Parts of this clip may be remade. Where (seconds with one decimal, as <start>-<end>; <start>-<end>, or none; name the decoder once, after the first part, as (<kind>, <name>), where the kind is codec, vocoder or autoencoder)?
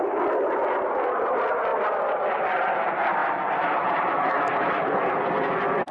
none